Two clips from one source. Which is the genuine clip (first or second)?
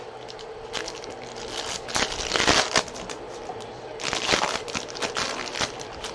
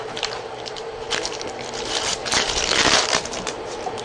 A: first